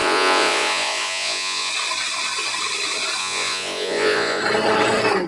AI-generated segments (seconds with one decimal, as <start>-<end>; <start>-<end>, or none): 0.0-1.7; 3.2-4.4